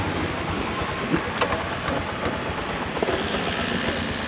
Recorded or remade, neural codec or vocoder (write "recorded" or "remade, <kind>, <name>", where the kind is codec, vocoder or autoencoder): recorded